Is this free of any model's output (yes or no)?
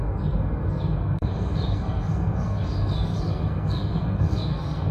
no